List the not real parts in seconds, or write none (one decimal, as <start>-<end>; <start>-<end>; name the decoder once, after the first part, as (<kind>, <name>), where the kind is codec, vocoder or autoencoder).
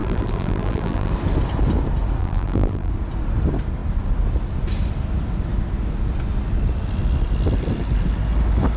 0.0-1.1 (vocoder, BigVGAN v2); 2.2-2.9